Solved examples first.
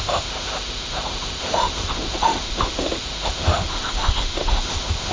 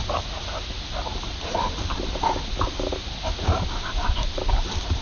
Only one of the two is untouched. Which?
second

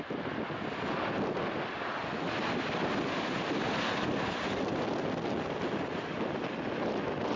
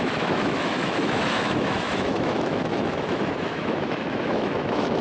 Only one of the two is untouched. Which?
first